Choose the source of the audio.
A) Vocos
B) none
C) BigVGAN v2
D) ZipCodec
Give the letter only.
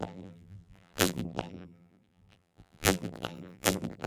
C